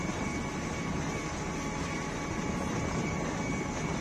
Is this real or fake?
real